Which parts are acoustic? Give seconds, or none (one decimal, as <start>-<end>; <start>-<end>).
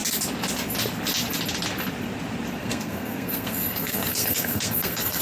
0.0-2.6